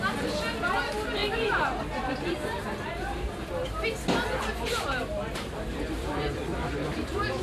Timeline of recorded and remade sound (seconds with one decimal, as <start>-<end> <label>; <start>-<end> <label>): 0.0-7.4 recorded